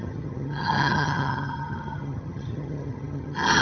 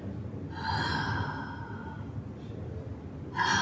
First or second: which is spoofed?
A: first